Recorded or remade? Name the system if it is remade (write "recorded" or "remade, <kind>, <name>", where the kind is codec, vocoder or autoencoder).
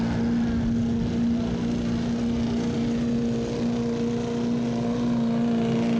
recorded